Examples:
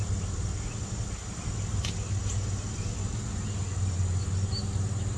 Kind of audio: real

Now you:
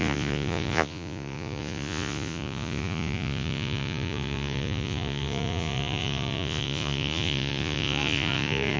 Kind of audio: fake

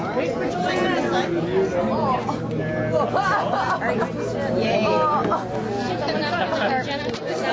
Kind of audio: real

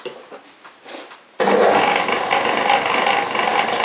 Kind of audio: real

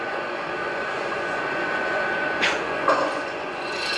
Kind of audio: fake